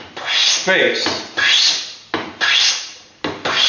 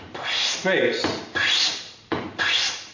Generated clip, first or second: second